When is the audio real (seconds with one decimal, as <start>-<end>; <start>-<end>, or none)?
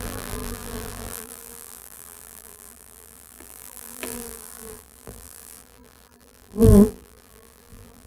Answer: none